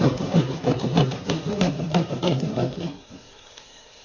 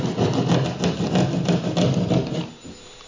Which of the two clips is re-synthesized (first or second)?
first